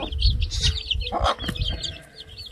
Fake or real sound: real